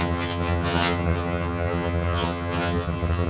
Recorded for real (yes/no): no